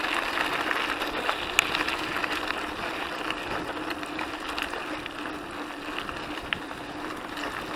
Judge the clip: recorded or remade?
recorded